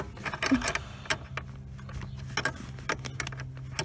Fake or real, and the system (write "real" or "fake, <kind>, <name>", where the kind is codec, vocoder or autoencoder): real